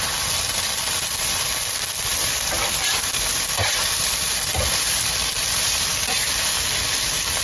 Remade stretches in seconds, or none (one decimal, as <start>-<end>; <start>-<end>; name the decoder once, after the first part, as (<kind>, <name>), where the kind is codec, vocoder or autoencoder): 2.1-5.9 (vocoder, BigVGAN v2)